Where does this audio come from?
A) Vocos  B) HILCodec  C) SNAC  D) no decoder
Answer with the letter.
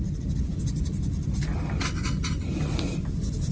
D